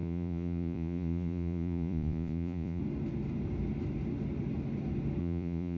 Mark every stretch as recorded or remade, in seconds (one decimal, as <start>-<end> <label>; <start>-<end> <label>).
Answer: 0.0-2.8 remade; 2.8-5.2 recorded; 5.2-5.8 remade